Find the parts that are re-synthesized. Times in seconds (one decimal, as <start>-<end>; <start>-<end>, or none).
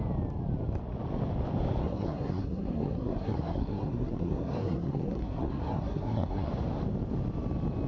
1.8-6.5